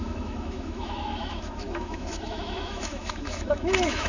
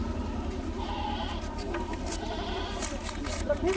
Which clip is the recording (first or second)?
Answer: second